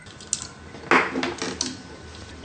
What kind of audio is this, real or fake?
real